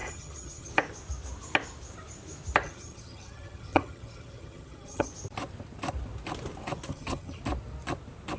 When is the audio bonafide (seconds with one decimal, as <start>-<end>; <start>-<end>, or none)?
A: 0.7-2.6; 5.1-6.9; 7.4-8.4